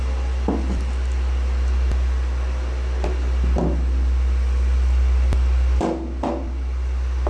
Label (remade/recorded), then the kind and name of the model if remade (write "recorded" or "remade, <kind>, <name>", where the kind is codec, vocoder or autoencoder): recorded